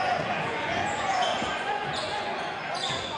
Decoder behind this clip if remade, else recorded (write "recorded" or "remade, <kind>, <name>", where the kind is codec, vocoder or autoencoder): remade, vocoder, Vocos